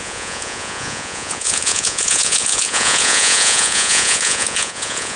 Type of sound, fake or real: fake